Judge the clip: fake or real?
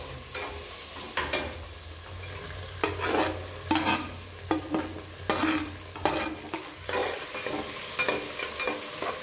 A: real